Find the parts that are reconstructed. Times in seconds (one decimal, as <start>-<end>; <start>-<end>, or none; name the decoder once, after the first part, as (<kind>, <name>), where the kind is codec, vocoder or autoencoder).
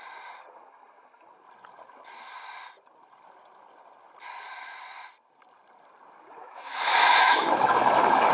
6.4-8.3 (autoencoder, DAC-VAE)